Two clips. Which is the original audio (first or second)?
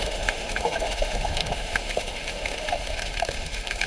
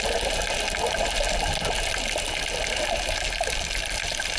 second